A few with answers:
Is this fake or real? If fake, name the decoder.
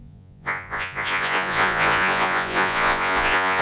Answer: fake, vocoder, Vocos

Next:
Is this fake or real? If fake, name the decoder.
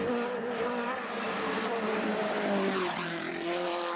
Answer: fake, vocoder, BigVGAN v2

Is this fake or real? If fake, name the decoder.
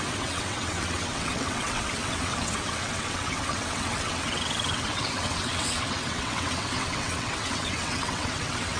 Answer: fake, vocoder, WaveNeXt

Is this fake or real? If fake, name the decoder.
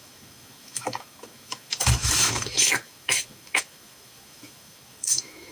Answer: fake, autoencoder, DAC-VAE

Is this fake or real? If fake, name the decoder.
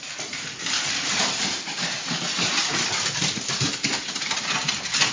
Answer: real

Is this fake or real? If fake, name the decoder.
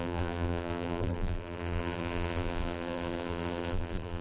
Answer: fake, vocoder, BigVGAN v2